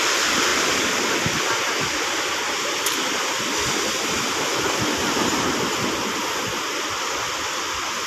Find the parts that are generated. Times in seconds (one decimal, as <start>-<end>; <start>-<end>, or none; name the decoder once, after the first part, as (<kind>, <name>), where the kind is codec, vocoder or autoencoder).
none